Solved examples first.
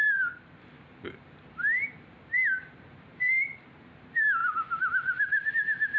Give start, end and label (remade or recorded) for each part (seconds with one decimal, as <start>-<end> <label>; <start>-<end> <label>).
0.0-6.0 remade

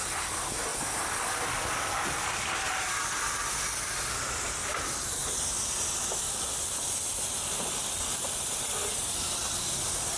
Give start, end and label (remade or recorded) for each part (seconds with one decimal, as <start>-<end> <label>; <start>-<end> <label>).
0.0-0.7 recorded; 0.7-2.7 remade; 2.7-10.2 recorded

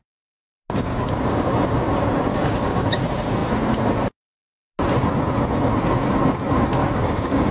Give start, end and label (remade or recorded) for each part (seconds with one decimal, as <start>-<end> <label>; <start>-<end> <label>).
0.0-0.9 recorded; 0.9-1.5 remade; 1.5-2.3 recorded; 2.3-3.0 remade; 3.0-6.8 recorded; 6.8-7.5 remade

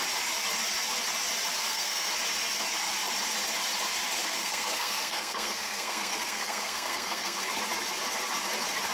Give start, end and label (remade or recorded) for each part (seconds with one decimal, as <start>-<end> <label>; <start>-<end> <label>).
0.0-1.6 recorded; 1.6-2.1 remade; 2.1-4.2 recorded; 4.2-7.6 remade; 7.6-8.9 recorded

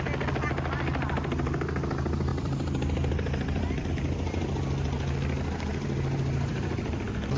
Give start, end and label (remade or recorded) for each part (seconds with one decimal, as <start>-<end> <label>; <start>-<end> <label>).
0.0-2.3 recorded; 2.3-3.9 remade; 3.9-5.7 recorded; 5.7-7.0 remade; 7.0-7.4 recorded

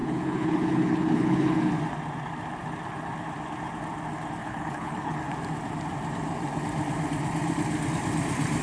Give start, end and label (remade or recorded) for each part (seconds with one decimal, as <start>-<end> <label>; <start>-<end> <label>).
0.0-1.7 remade; 1.7-4.4 recorded; 4.4-5.2 remade; 5.2-8.6 recorded

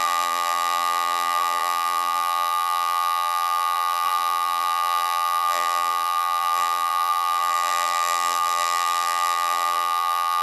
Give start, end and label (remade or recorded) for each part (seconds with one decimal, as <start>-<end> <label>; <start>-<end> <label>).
0.0-10.4 remade

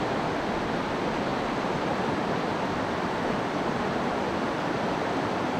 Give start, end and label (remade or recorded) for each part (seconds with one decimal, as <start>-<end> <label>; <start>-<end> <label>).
0.0-1.3 recorded; 1.3-4.0 remade; 4.0-5.6 recorded